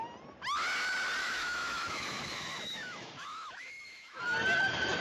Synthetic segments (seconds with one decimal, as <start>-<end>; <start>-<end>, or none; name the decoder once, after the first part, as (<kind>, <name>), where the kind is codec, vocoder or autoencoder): 1.2-4.2 (autoencoder, DAC-VAE)